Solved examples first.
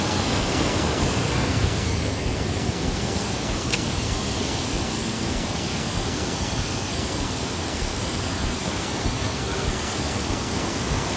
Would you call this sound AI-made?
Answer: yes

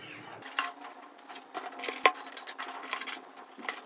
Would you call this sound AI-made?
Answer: no